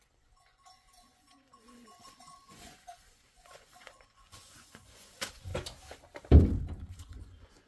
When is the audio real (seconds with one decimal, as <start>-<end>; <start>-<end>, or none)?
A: 5.5-6.9